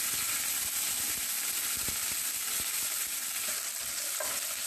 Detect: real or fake real